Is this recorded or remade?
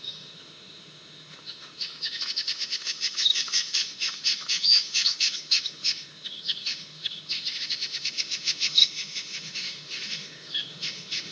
remade